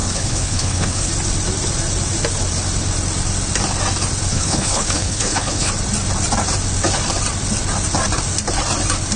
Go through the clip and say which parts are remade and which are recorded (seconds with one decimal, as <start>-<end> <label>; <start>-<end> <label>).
0.0-1.1 remade; 1.1-4.3 recorded; 4.3-5.7 remade; 5.7-9.2 recorded